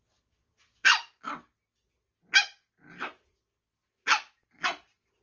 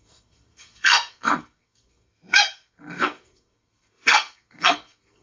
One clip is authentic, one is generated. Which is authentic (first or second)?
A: first